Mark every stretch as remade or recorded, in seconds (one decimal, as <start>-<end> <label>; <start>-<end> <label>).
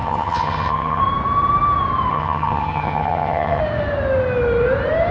0.0-1.0 remade; 1.0-2.1 recorded; 2.1-3.6 remade; 3.6-5.1 recorded